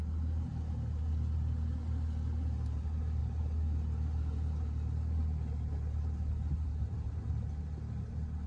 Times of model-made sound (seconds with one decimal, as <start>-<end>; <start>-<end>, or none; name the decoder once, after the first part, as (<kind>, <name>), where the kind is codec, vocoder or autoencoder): none